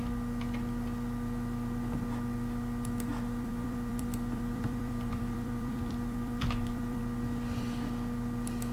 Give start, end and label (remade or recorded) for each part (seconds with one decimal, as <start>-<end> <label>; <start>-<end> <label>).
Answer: 0.0-3.1 recorded; 3.1-7.0 remade; 7.0-8.7 recorded